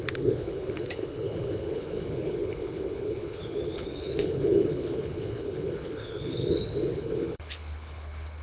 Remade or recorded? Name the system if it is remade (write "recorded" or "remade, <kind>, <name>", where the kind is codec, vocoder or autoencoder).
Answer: remade, codec, HILCodec